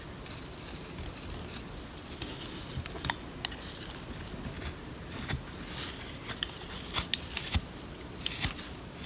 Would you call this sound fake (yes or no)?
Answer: no